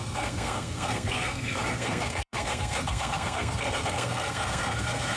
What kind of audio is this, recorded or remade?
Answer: remade